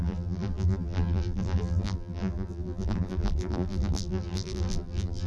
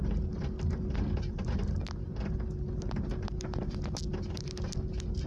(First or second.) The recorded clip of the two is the second